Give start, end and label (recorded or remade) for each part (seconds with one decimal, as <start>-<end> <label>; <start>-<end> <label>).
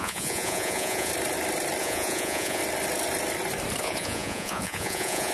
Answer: 0.0-1.1 remade; 1.1-1.8 recorded; 1.8-2.6 remade; 2.6-3.8 recorded; 3.8-5.3 remade